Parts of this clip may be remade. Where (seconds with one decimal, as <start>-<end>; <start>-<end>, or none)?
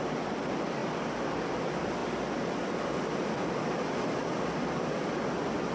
none